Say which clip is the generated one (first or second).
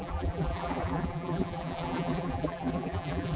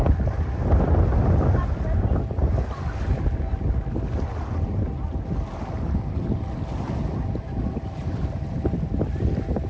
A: first